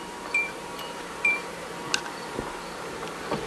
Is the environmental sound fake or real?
fake